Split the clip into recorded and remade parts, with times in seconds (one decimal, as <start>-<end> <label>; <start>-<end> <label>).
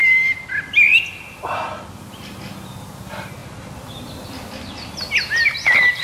0.0-6.0 recorded